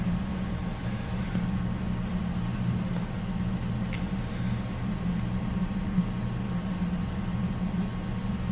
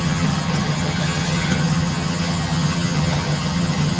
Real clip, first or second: first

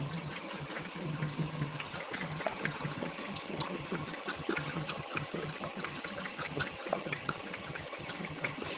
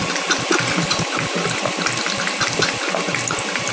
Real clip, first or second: second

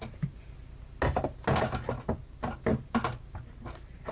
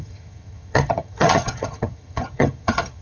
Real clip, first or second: first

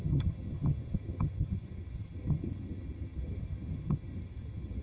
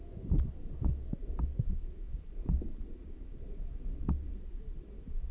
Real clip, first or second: second